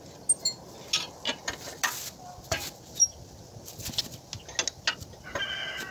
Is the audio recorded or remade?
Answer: recorded